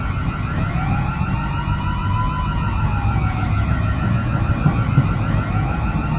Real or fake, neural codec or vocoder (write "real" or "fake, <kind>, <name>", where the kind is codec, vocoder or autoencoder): real